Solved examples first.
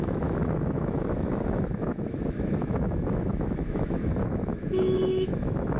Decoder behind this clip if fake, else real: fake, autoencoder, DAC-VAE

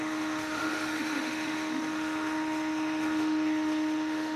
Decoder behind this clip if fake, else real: fake, autoencoder, DAC-VAE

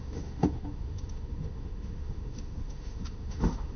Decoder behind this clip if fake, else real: fake, autoencoder, DAC-VAE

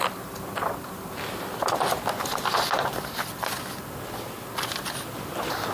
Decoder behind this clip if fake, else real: real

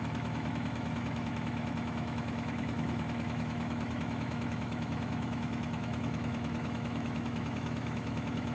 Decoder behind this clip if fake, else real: fake, autoencoder, DAC-VAE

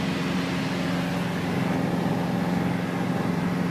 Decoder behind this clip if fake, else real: real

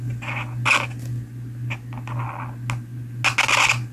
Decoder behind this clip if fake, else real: real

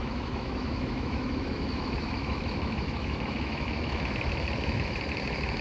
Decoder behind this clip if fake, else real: fake, autoencoder, DAC-VAE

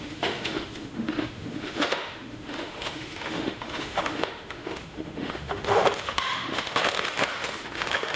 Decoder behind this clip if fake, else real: fake, autoencoder, DAC-VAE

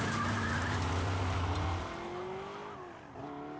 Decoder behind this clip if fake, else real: real